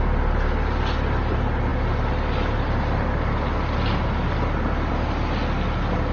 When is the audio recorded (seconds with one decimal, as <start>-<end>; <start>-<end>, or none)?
0.0-6.1